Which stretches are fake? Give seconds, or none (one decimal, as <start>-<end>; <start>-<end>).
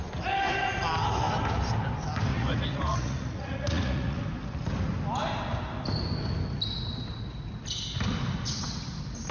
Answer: 2.3-4.2